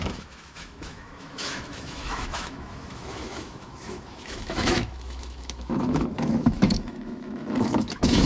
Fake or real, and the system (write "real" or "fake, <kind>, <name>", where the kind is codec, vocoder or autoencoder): fake, autoencoder, DAC-VAE